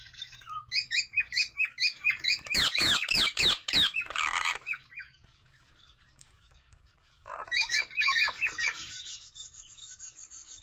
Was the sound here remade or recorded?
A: remade